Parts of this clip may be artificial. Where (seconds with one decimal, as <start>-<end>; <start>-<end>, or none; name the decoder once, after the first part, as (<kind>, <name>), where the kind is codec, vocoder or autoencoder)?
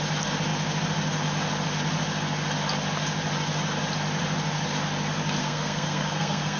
5.4-6.6 (codec, SNAC)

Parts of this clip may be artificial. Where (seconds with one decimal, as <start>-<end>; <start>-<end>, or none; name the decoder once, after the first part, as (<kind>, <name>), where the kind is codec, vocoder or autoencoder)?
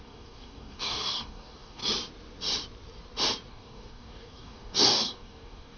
0.0-1.8 (codec, DAC); 3.5-5.8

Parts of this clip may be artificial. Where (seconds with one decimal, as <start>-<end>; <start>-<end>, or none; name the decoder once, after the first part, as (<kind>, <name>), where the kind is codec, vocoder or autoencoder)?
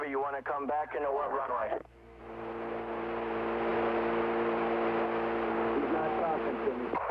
1.1-2.2 (codec, SNAC)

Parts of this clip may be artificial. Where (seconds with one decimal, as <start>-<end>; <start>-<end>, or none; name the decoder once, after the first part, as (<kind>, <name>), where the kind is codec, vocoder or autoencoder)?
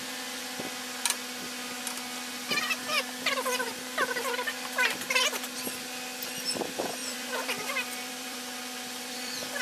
2.9-3.7 (vocoder, BigVGAN v2); 7.0-9.6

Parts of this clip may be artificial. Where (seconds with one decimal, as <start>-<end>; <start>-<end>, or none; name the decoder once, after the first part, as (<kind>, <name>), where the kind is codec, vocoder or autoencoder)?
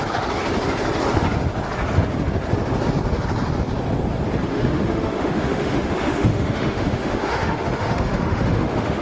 4.5-9.0 (autoencoder, DAC-VAE)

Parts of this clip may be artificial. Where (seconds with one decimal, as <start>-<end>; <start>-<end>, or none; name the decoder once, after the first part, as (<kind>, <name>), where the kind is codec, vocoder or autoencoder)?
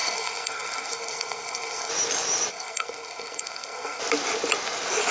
0.0-1.9 (codec, SNAC); 2.5-4.0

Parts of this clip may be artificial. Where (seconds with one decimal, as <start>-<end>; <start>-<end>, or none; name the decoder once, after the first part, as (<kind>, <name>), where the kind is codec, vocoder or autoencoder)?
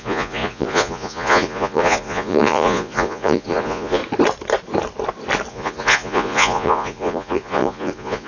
0.0-4.0 (vocoder, Vocos); 5.5-8.3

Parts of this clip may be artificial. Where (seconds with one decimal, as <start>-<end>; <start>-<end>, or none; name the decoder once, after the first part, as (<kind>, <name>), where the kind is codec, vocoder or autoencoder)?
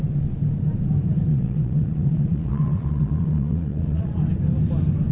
1.3-4.2 (vocoder, Vocos)